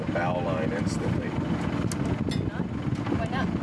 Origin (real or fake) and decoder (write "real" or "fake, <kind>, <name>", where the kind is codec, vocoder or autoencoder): real